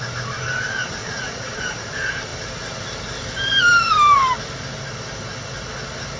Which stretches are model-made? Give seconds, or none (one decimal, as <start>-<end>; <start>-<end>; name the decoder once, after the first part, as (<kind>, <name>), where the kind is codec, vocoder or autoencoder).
1.0-1.9 (vocoder, Vocos)